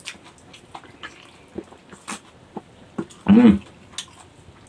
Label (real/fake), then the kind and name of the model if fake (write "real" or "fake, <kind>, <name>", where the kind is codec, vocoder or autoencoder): real